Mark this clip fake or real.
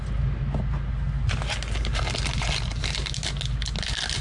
real